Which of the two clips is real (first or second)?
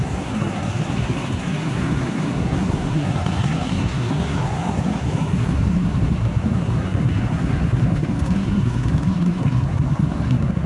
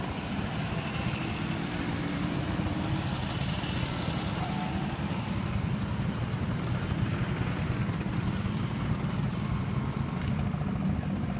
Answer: second